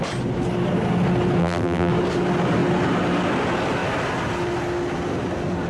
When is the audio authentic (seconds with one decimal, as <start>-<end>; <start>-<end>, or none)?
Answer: 0.0-1.4; 1.9-5.7